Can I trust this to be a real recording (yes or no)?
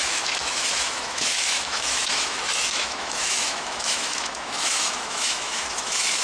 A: no